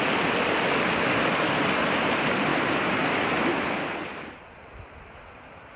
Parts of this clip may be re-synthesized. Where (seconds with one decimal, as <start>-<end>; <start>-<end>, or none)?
2.5-3.3; 4.0-5.1